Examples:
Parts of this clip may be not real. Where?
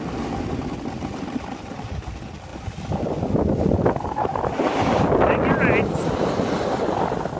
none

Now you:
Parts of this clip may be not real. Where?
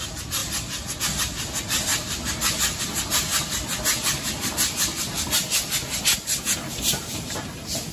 0.0-0.4 (vocoder, BigVGAN v2); 1.0-1.9; 2.8-3.3; 6.9-7.9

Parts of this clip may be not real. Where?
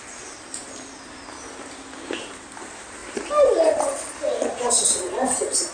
0.0-5.7 (vocoder, BigVGAN v2)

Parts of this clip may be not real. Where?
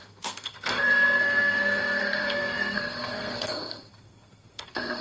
0.0-5.0 (codec, SNAC)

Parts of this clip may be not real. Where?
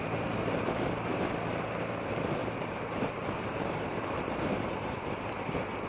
2.4-5.3 (vocoder, BigVGAN v2)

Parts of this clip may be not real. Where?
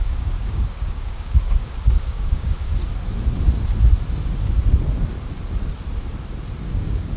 0.0-2.8 (codec, DAC); 6.6-7.2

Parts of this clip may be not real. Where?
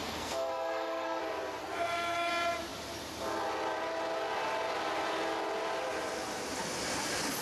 0.0-1.2 (codec, SNAC); 1.6-2.3